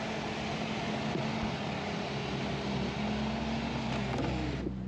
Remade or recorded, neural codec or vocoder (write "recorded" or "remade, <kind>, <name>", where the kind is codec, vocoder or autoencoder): recorded